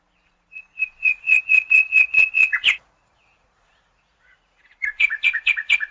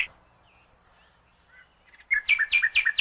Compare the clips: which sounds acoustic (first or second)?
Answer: second